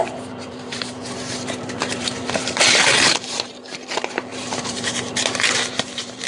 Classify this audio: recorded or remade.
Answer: remade